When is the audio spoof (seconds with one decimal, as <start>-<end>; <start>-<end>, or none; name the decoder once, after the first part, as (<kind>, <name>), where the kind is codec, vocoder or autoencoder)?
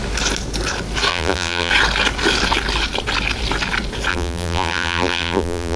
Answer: 1.1-1.7 (vocoder, BigVGAN v2); 4.1-5.8